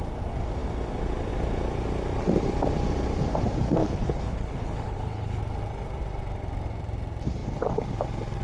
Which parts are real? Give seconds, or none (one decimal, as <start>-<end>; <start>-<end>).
0.0-3.8; 5.4-8.4